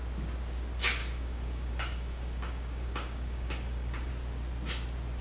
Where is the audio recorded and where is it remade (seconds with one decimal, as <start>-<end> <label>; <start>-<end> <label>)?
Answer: 0.0-1.0 recorded; 1.0-4.1 remade; 4.1-5.2 recorded